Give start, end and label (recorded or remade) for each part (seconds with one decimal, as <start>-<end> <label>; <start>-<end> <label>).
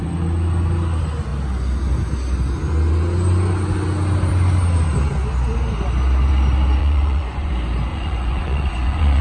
0.0-6.8 recorded; 6.8-7.5 remade; 7.5-7.9 recorded; 7.9-9.2 remade